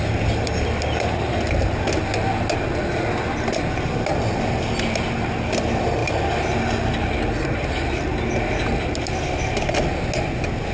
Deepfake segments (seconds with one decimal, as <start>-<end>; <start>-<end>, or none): none